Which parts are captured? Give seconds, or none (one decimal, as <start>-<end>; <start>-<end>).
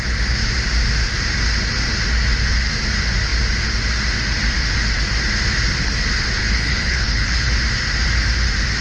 0.0-6.4; 7.5-8.8